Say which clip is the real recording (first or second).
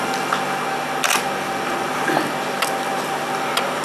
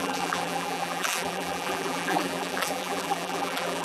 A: first